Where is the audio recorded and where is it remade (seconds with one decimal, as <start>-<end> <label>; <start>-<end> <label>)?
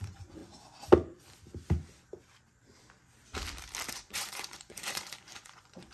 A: 0.0-0.4 remade; 0.4-3.9 recorded; 3.9-5.9 remade